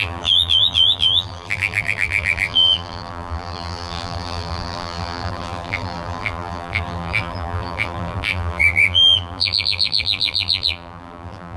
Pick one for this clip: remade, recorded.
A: remade